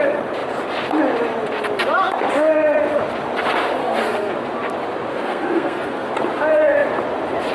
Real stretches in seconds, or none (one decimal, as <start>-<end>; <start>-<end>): 0.0-3.8; 4.3-5.1; 6.1-7.5